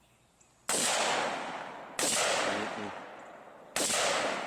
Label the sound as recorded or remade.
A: recorded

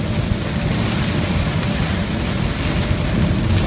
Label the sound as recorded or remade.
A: recorded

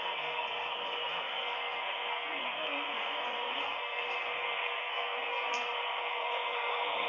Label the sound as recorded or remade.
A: remade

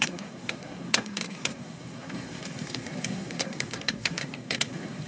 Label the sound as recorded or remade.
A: remade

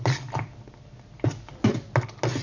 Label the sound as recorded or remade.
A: recorded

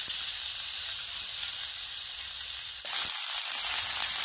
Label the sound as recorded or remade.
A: recorded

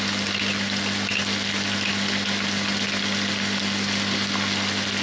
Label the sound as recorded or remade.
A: recorded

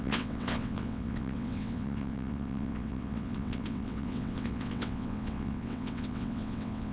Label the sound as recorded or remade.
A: remade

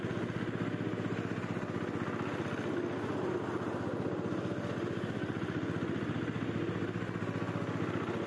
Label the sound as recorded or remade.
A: recorded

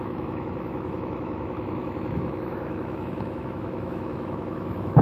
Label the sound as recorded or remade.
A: remade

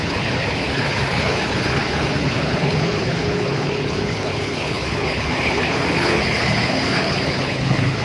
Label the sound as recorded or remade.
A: remade